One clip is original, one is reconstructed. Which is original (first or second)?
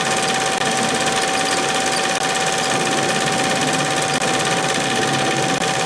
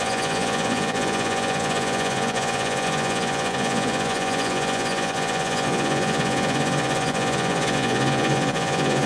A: first